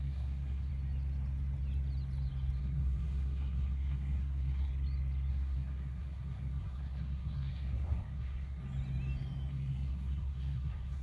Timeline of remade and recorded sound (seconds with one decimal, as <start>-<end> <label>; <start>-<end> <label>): 0.0-0.7 remade; 0.7-2.6 recorded; 2.6-4.7 remade; 4.7-5.3 recorded; 5.3-8.6 remade; 8.6-9.5 recorded; 9.5-11.0 remade